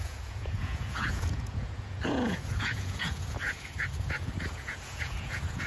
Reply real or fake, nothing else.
fake